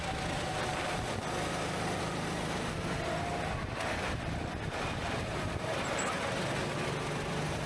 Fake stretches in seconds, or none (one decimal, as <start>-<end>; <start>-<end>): none